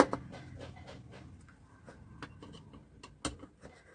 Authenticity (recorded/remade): recorded